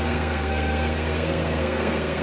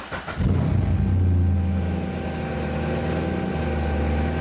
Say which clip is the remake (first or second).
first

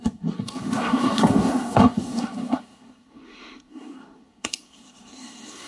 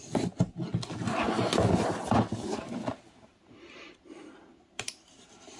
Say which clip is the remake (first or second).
first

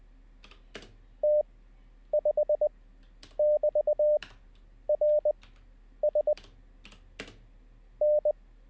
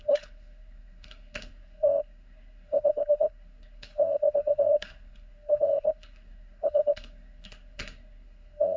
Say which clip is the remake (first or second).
second